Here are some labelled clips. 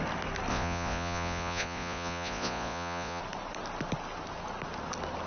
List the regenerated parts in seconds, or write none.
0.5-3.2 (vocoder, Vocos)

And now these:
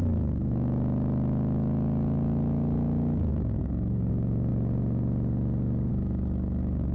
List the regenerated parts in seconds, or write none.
0.0-4.5 (autoencoder, DAC-VAE); 5.9-6.9

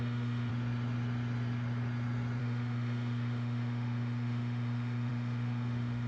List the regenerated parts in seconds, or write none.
0.0-0.5 (autoencoder, DAC-VAE); 2.4-6.1

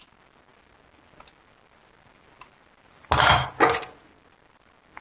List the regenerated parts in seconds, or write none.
none